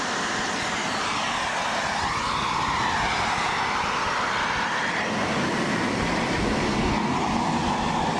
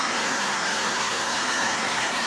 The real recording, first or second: first